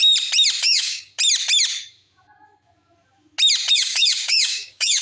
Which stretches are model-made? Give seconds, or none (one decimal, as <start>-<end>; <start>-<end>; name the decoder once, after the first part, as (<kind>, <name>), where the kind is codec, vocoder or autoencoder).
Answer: 0.6-1.1 (codec, DAC); 3.7-5.0